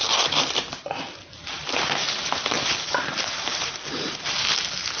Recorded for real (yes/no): no